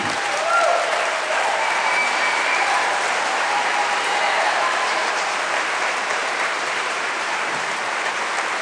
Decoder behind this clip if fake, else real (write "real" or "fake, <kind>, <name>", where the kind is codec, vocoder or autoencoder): fake, vocoder, BigVGAN v2